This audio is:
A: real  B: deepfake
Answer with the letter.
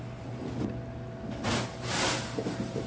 A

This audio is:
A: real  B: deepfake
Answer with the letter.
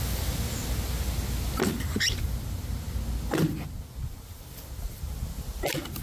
A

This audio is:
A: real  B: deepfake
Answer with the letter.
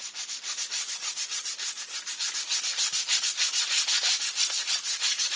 A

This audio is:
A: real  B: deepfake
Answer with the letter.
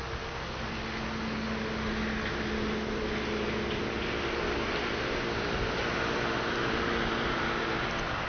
A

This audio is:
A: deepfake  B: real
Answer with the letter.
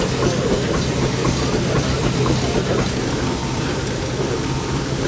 B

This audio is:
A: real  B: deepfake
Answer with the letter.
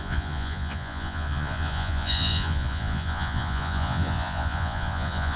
B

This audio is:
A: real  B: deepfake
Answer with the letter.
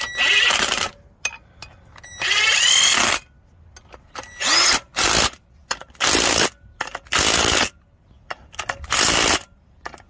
A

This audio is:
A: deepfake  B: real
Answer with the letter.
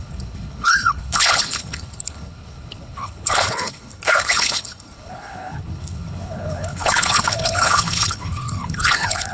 A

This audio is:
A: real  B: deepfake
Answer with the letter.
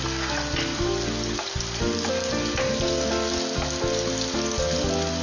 A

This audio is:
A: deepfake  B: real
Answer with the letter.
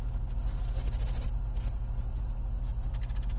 B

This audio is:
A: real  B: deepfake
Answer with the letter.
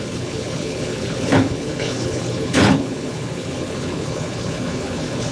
B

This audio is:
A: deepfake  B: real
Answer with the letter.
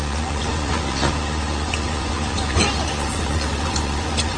A